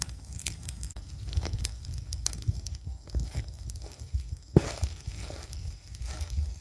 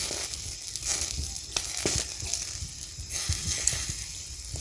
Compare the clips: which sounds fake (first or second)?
first